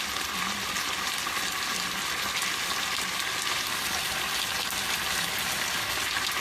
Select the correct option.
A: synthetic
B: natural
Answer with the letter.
B